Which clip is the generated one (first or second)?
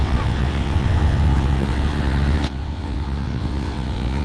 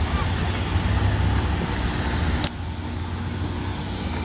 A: first